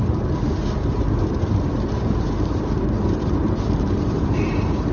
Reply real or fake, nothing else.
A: fake